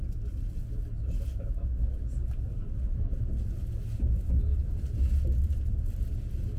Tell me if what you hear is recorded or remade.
recorded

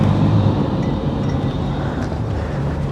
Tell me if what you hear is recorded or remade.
remade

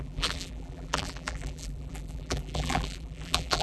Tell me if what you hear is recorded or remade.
remade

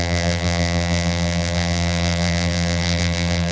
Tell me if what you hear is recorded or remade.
remade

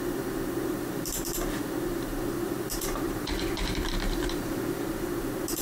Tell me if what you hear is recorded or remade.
remade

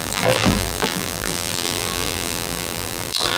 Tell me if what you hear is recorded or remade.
remade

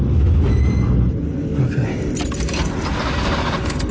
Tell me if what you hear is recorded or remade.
recorded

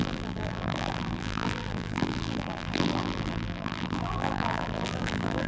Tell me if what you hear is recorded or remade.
remade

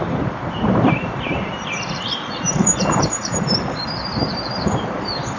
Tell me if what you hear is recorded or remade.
remade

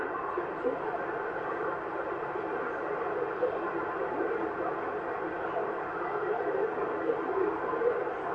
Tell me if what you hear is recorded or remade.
recorded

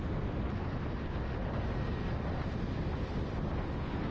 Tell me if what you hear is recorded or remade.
recorded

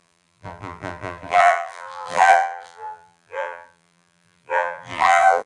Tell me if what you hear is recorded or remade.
remade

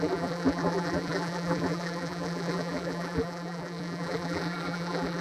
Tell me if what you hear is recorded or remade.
remade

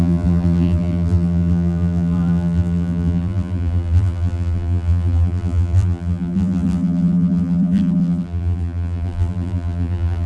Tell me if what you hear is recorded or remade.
remade